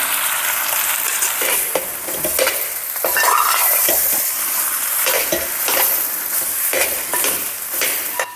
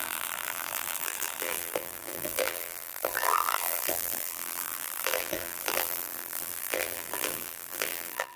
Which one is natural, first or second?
first